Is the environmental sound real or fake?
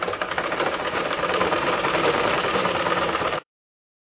fake